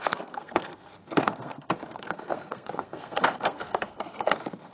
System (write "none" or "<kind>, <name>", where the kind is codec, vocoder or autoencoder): codec, SNAC